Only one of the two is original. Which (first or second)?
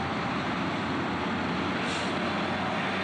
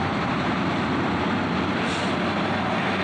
first